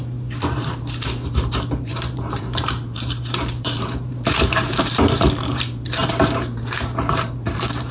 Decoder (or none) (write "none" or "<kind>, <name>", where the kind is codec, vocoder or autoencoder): vocoder, BigVGAN v2